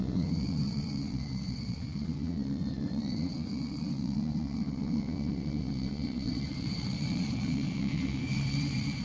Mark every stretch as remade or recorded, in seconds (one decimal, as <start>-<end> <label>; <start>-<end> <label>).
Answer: 0.0-9.0 remade